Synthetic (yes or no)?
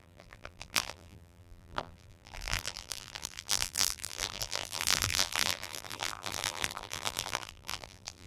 yes